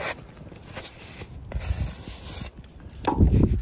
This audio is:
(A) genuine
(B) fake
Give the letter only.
A